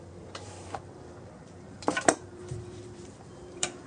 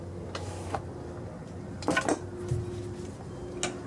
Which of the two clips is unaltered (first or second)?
second